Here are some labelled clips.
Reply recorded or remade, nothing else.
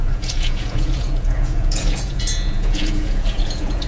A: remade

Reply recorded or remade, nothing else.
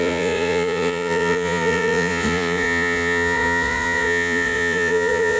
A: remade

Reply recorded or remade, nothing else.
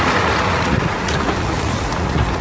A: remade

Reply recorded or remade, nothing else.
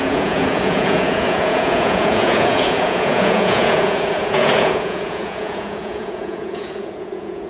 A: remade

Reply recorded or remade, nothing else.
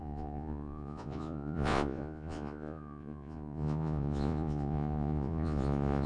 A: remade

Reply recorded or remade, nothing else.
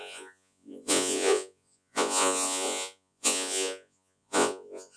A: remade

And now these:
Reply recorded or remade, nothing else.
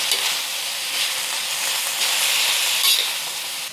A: recorded